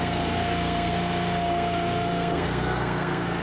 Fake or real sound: fake